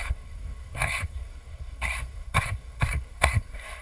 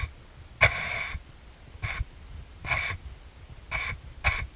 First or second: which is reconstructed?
first